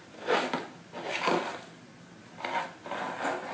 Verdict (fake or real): real